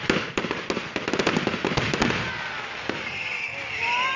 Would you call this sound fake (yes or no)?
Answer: no